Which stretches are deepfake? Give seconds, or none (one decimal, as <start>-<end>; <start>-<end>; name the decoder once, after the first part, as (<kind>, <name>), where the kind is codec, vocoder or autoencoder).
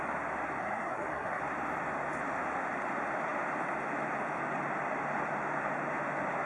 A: 0.6-1.4 (codec, SNAC)